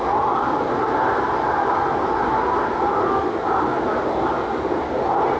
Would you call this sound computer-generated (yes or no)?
no